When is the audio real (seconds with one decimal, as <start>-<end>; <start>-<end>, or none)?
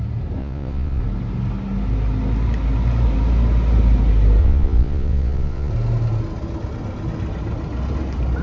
0.0-0.4; 1.0-4.4; 5.7-8.4